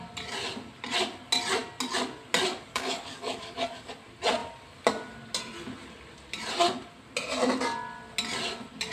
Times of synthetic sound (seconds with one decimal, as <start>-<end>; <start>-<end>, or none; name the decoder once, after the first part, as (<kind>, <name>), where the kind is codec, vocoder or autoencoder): 2.7-3.9 (codec, DAC)